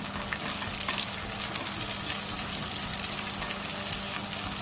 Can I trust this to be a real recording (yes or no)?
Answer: yes